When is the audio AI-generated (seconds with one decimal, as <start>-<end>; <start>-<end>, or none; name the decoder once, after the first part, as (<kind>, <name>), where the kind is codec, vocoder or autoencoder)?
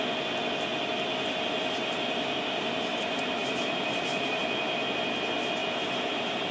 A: 3.4-4.4 (vocoder, BigVGAN v2); 5.6-6.5